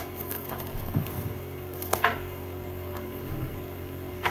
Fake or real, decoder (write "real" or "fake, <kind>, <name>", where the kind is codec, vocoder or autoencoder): fake, codec, SNAC